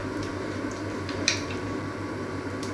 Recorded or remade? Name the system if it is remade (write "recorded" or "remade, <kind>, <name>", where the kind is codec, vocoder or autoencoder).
remade, vocoder, BigVGAN v2